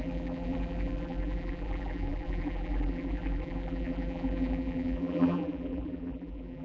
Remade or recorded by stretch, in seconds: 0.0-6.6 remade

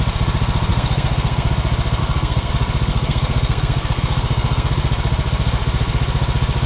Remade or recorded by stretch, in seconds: 0.0-0.7 recorded; 0.7-1.5 remade; 1.5-2.0 recorded; 2.0-2.5 remade; 2.5-2.9 recorded; 2.9-4.7 remade; 4.7-6.7 recorded

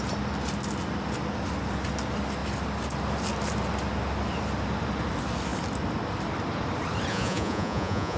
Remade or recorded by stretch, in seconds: 0.0-7.1 recorded; 7.1-8.2 remade

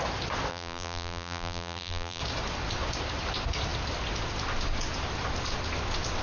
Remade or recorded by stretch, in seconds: 0.0-0.5 recorded; 0.5-2.2 remade; 2.2-6.2 recorded

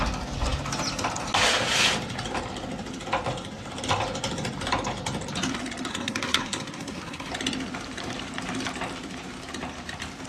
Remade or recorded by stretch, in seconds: 0.0-5.9 recorded; 5.9-7.3 remade; 7.3-10.3 recorded